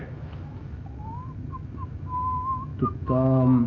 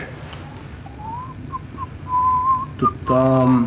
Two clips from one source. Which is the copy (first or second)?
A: first